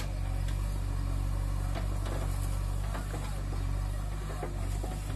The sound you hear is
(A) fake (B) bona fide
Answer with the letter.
B